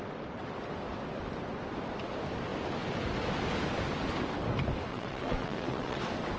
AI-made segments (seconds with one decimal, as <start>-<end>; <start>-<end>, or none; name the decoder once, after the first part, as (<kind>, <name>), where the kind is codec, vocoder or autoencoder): 4.9-6.0 (vocoder, WaveNeXt)